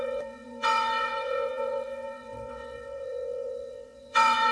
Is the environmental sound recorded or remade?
remade